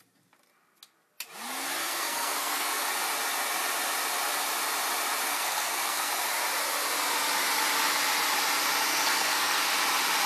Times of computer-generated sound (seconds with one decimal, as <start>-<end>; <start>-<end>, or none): 1.8-2.8; 5.3-6.1; 8.9-9.6